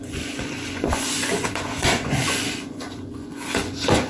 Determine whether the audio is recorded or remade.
remade